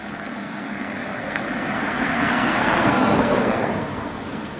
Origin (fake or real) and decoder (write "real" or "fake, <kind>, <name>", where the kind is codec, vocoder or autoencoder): fake, codec, SNAC